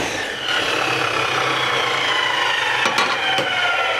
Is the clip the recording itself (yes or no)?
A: yes